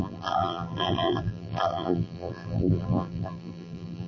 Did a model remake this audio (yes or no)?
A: yes